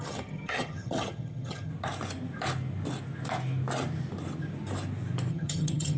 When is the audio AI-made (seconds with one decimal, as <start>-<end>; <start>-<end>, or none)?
0.0-1.7; 5.3-6.0